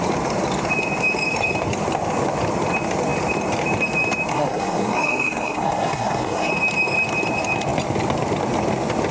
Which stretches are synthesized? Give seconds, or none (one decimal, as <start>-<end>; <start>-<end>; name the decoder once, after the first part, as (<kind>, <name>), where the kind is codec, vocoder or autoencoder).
4.3-6.5 (codec, SNAC)